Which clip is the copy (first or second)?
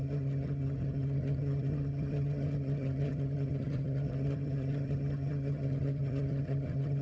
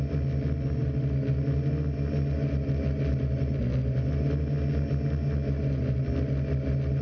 first